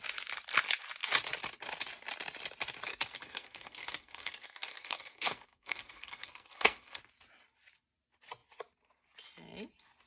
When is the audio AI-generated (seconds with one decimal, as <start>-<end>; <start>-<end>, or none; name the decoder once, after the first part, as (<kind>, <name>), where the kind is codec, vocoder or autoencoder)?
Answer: 2.9-7.0 (codec, SNAC)